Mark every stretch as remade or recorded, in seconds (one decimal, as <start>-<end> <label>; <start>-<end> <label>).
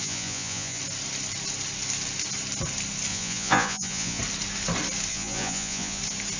0.0-0.8 remade; 0.8-3.1 recorded; 3.1-4.2 remade; 4.2-5.1 recorded; 5.1-6.0 remade; 6.0-6.4 recorded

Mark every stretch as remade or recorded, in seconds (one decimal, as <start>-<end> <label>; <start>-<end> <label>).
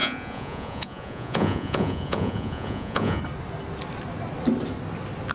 0.0-3.2 remade; 3.2-5.3 recorded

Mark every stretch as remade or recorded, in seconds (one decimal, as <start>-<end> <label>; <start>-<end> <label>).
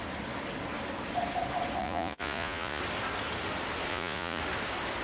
0.0-1.8 recorded; 1.8-2.8 remade; 2.8-3.9 recorded; 3.9-4.4 remade; 4.4-5.0 recorded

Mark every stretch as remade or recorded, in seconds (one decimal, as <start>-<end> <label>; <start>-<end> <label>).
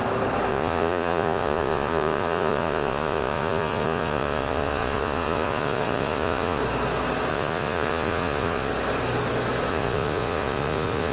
0.0-0.5 recorded; 0.5-6.6 remade; 6.6-7.3 recorded; 7.3-8.7 remade; 8.7-9.7 recorded; 9.7-11.1 remade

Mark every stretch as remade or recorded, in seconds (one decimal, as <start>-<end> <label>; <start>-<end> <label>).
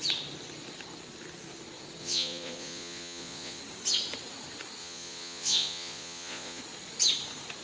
0.0-2.0 recorded; 2.0-3.6 remade; 3.6-4.8 recorded; 4.8-6.6 remade; 6.6-7.6 recorded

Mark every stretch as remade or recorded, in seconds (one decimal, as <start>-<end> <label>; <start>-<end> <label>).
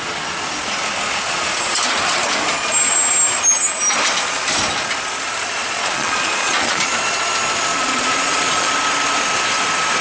0.0-5.6 recorded; 5.6-6.9 remade; 6.9-7.7 recorded; 7.7-8.7 remade; 8.7-10.0 recorded